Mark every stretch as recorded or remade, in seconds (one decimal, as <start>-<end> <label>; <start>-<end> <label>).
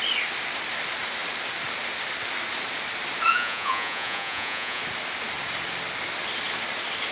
0.0-3.3 recorded; 3.3-4.8 remade; 4.8-7.1 recorded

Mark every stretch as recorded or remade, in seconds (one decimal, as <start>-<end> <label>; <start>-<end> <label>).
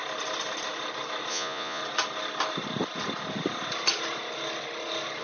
0.0-1.3 recorded; 1.3-1.8 remade; 1.8-5.2 recorded